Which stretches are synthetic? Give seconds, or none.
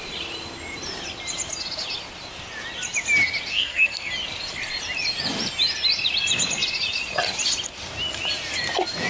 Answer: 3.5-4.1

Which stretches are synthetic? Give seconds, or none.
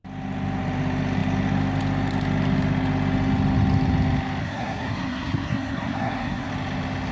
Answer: 4.4-6.5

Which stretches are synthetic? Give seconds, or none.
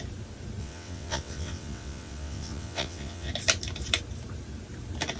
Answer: 0.6-3.3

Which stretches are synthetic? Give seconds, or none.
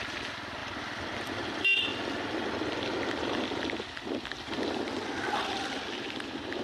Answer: none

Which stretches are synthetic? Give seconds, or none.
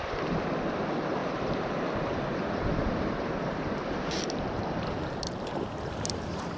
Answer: 1.2-5.2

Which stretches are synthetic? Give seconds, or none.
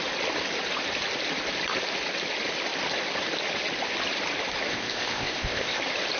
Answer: 4.7-5.8